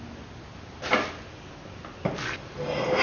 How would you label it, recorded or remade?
recorded